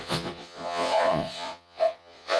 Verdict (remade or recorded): remade